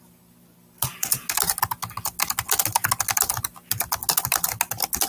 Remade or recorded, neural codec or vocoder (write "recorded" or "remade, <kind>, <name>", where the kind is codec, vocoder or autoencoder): recorded